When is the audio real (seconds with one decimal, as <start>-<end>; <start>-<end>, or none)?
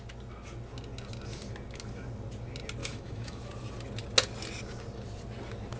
0.0-2.8; 3.4-5.8